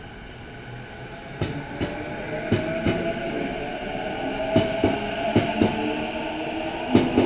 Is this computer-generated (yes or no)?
no